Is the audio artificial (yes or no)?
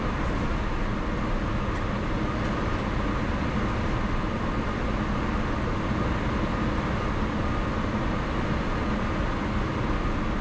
no